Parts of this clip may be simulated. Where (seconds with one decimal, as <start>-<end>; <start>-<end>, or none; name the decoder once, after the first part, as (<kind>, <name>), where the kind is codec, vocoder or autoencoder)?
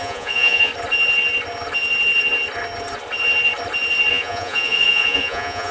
0.0-0.7 (vocoder, Vocos); 4.1-5.7